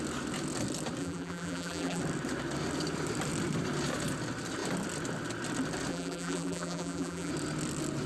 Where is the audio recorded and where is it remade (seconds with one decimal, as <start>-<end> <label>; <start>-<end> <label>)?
0.0-1.0 recorded; 1.0-2.0 remade; 2.0-5.9 recorded; 5.9-7.3 remade; 7.3-8.1 recorded